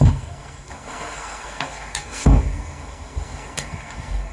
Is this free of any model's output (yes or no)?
no